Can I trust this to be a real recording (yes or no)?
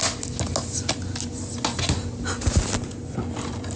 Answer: yes